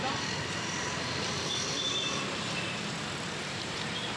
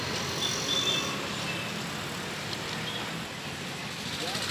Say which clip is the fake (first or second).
first